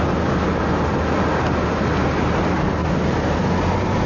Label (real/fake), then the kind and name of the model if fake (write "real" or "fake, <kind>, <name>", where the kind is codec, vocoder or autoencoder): real